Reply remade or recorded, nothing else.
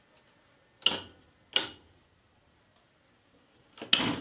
recorded